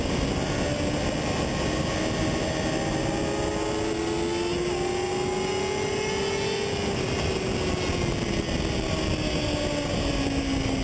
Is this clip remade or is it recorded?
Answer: recorded